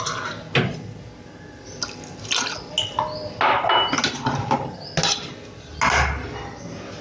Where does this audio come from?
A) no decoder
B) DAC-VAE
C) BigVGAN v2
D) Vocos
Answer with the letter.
A